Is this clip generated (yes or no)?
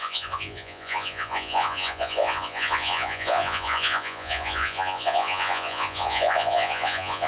yes